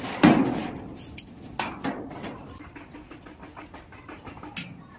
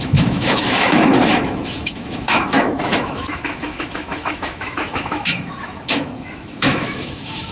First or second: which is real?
first